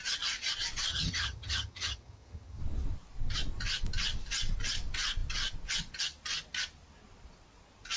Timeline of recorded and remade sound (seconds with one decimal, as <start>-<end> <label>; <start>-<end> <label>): 0.0-0.9 recorded; 0.9-2.6 remade; 2.6-8.0 recorded